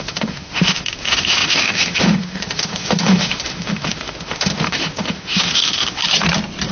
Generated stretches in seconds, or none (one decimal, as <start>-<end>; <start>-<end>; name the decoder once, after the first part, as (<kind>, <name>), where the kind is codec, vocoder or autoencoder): 0.0-6.0 (autoencoder, DAC-VAE)